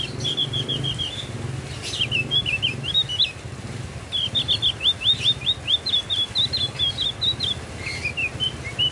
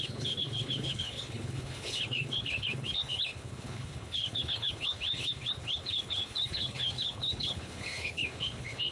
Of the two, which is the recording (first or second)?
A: first